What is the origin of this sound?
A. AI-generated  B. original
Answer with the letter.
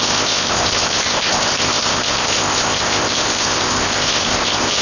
A